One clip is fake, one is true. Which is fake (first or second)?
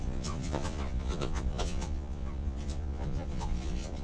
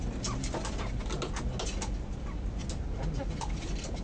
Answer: first